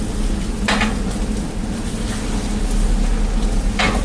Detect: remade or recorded recorded